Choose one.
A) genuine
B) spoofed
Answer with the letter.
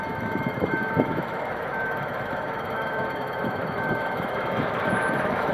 B